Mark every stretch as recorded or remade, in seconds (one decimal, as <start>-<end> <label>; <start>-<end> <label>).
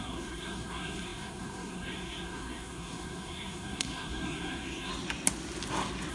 0.0-4.9 remade; 4.9-6.1 recorded